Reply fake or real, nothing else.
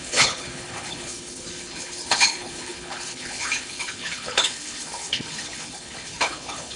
fake